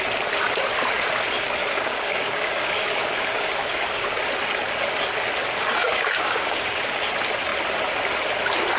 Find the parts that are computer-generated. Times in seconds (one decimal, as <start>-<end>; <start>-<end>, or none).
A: 1.6-4.2; 5.4-7.0